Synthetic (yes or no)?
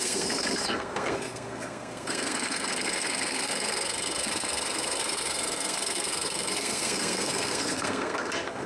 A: yes